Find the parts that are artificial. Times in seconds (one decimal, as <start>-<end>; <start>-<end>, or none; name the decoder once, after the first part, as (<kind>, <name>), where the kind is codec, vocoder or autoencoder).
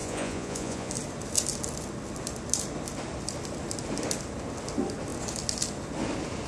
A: 0.0-0.9 (vocoder, Vocos)